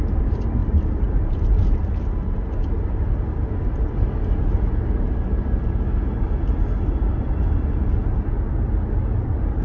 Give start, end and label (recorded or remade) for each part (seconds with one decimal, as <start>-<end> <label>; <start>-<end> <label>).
0.0-9.6 recorded